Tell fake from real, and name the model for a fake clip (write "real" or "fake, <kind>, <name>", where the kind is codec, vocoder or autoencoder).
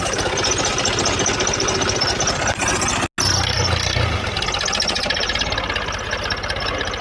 real